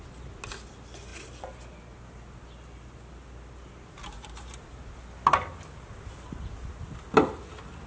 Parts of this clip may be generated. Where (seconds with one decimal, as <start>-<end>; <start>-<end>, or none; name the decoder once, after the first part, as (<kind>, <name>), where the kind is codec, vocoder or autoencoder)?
none